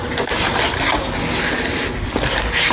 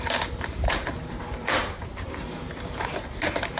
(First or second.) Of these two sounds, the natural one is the first